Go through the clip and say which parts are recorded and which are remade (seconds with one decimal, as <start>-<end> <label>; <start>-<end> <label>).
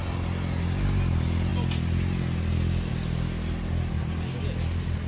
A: 0.0-5.1 recorded